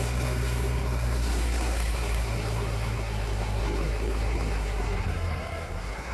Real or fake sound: fake